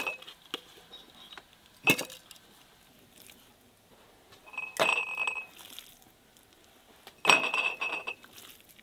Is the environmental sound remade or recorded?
recorded